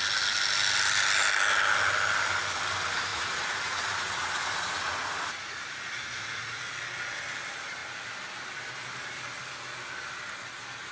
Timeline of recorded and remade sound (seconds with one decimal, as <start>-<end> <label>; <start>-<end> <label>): 0.0-3.1 recorded; 3.1-6.6 remade; 6.6-10.9 recorded